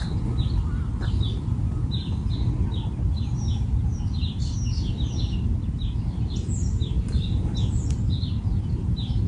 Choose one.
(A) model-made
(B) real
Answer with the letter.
B